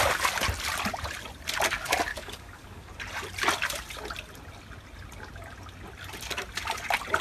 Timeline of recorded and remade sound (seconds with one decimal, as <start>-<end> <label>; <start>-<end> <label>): 0.0-2.1 recorded; 2.1-2.9 remade; 2.9-7.2 recorded